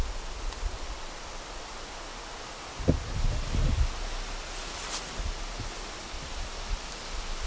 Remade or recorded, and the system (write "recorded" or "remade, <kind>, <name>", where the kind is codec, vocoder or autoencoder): recorded